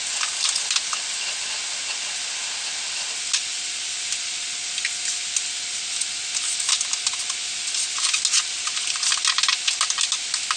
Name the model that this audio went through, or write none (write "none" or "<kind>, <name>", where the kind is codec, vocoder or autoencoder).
none